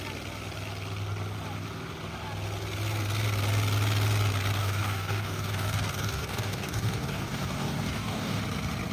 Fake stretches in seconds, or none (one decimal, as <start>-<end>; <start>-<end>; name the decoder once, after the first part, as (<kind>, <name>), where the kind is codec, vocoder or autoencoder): 4.6-8.4 (codec, DAC)